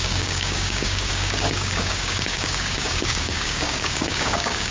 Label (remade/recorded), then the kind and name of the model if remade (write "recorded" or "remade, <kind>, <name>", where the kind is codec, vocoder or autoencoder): remade, codec, DAC